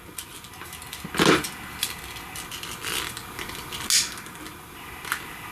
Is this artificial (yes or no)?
no